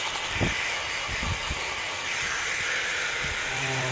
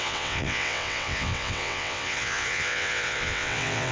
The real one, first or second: first